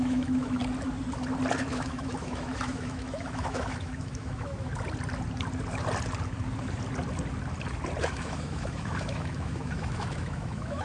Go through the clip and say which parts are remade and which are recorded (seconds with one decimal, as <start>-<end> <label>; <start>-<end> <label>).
0.0-0.6 remade; 0.6-1.6 recorded; 1.6-4.7 remade; 4.7-8.0 recorded; 8.0-10.8 remade